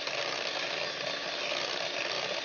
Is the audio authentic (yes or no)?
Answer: yes